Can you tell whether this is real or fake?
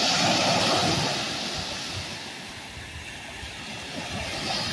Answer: real